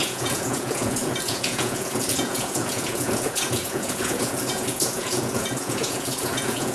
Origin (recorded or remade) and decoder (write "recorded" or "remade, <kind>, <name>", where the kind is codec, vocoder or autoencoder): remade, vocoder, Vocos